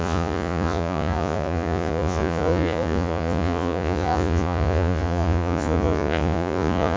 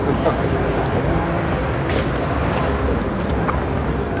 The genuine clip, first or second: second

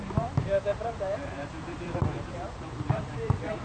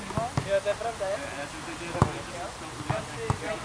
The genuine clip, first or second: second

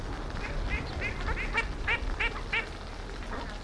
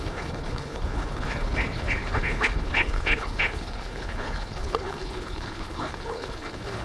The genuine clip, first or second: first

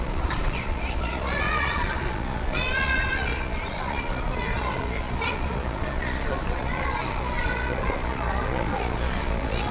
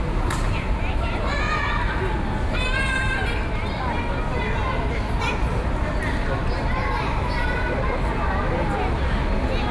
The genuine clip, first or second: second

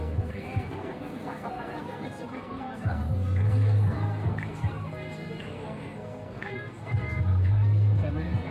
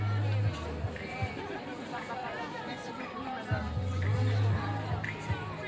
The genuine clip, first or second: second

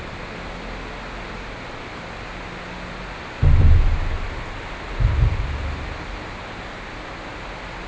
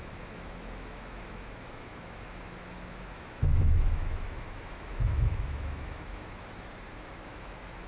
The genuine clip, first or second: first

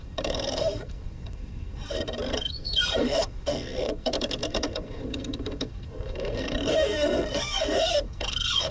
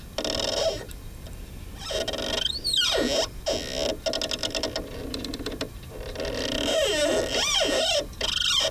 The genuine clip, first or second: second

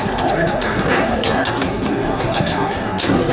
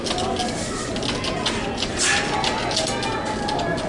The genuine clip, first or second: second